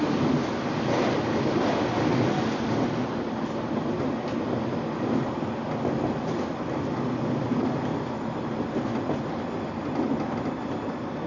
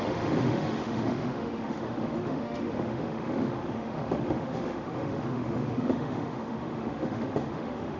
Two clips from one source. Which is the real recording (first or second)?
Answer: first